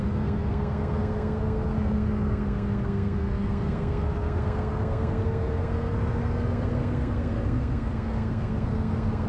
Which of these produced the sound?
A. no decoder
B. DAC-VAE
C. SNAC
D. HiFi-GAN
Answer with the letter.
C